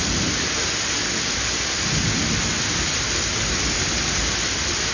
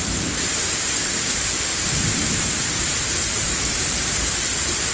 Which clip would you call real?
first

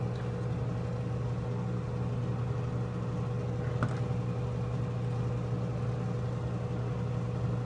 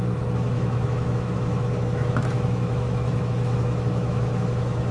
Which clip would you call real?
first